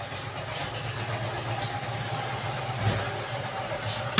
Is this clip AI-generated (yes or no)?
no